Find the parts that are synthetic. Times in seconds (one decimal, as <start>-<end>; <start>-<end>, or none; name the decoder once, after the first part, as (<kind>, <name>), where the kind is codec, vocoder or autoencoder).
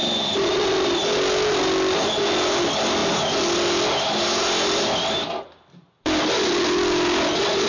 none